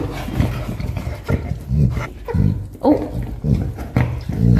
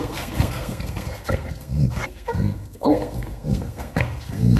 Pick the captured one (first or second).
first